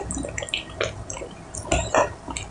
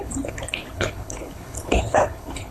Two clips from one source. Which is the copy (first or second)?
second